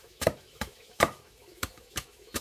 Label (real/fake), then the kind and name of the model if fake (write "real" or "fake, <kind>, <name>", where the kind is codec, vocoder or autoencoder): fake, autoencoder, DAC-VAE